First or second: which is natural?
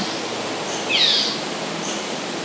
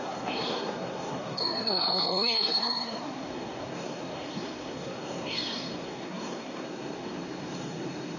first